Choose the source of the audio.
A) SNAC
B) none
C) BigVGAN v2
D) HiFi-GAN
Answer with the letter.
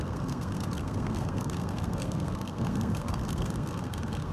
A